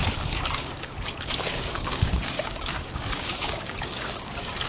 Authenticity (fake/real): fake